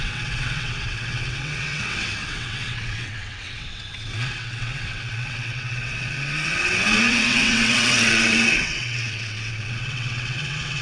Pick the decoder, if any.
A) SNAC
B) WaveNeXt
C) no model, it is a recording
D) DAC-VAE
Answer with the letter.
B